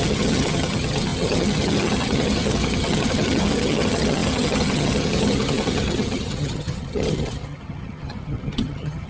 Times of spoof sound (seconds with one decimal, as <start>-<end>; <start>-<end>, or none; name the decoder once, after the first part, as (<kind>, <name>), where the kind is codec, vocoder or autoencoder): 0.0-9.1 (vocoder, HiFi-GAN)